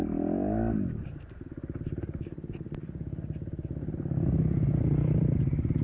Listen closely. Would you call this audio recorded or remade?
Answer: recorded